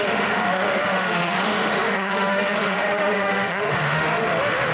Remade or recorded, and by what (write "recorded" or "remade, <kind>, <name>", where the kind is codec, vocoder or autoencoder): remade, autoencoder, DAC-VAE